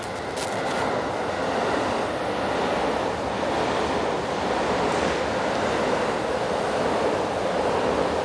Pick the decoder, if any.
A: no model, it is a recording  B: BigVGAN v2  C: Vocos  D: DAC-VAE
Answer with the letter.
A